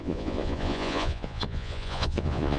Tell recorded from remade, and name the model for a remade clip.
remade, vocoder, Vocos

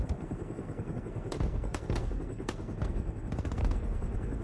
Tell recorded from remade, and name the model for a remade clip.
remade, codec, SNAC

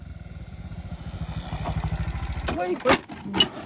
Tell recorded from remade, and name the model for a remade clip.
recorded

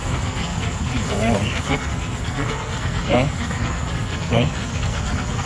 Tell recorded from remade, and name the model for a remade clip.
remade, codec, SNAC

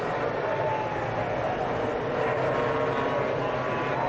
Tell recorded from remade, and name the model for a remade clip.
recorded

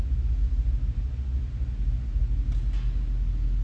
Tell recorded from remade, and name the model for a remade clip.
recorded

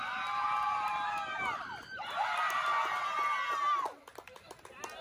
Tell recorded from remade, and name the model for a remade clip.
recorded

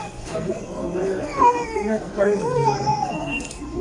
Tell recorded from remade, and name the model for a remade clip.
remade, codec, SNAC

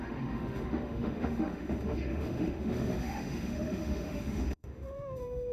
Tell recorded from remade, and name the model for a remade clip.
remade, autoencoder, DAC-VAE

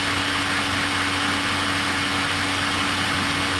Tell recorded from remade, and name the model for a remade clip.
recorded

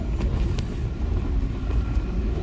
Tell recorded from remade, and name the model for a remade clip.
recorded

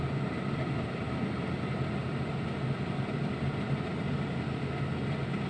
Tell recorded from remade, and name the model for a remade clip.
recorded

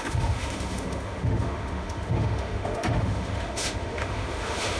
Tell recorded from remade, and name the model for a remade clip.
remade, autoencoder, DAC-VAE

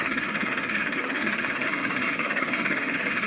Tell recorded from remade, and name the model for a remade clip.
remade, codec, SNAC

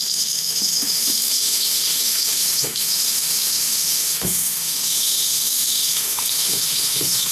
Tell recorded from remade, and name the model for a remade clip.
remade, autoencoder, DAC-VAE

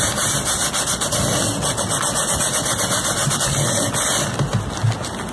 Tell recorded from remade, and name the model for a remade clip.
recorded